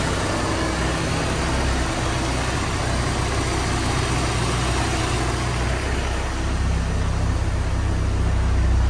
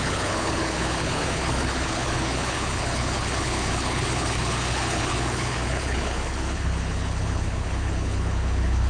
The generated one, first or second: second